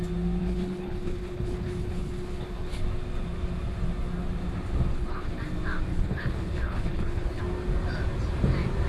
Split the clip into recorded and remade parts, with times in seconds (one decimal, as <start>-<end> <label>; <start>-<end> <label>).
0.0-0.4 recorded; 0.4-2.8 remade; 2.8-4.9 recorded; 4.9-5.4 remade; 5.4-5.9 recorded; 5.9-7.4 remade; 7.4-8.9 recorded